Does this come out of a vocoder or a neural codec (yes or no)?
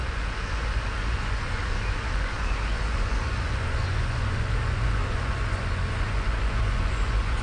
yes